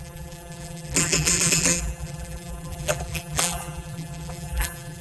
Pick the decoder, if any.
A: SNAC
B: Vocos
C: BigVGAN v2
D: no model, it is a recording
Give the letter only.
C